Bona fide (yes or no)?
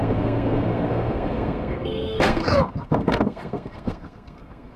no